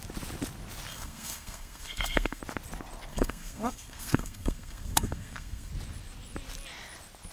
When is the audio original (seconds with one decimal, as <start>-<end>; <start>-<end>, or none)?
0.0-0.9; 2.4-3.1; 5.7-7.3